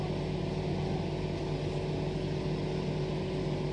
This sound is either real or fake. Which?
real